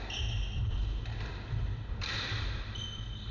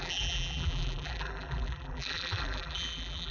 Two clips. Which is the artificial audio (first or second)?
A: second